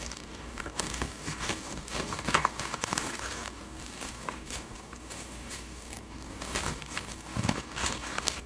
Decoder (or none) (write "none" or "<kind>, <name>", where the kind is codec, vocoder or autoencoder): codec, DAC